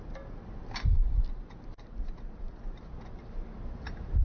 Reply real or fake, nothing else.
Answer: real